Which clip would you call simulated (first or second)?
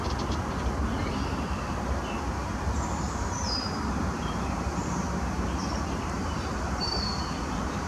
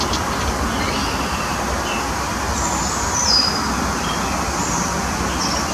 first